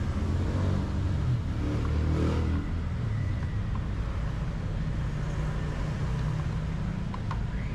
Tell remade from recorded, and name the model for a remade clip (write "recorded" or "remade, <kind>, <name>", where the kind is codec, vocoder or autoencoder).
recorded